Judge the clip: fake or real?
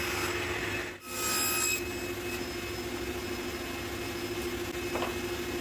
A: real